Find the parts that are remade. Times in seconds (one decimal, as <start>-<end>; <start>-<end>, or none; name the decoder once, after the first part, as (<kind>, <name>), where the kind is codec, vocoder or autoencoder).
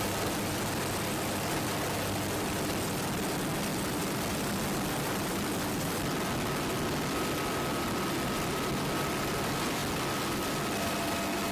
none